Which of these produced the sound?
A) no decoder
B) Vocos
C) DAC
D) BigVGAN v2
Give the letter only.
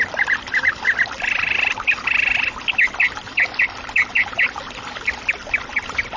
A